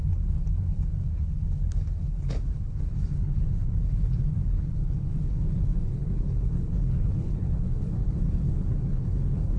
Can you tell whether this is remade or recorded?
remade